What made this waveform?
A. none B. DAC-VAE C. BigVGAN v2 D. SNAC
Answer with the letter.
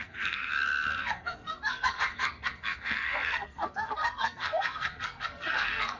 D